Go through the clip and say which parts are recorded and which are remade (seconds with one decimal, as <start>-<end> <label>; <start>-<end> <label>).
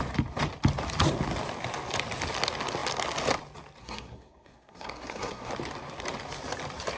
0.0-3.8 recorded; 3.8-5.5 remade; 5.5-7.0 recorded